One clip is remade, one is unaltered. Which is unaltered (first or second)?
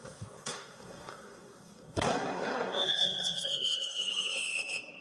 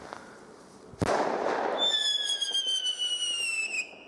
second